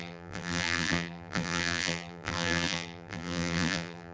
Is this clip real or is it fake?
fake